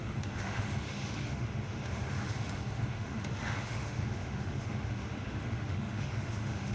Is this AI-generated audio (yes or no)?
yes